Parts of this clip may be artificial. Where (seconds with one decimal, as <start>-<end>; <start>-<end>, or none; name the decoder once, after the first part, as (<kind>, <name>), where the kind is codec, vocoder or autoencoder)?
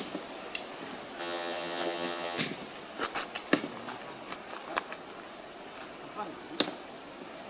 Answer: 1.2-2.4 (vocoder, HiFi-GAN)